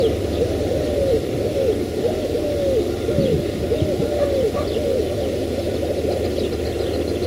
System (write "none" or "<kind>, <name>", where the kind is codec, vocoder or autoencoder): none